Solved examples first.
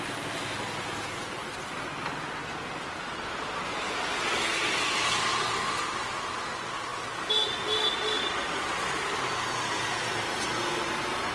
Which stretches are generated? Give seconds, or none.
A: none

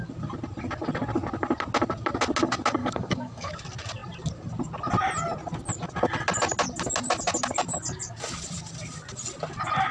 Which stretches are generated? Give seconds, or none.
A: 2.8-3.5

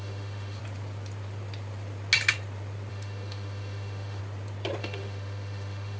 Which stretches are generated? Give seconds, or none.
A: 0.0-0.6; 2.9-4.2; 4.8-6.0

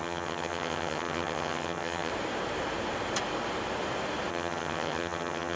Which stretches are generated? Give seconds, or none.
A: 0.0-2.1; 4.3-5.6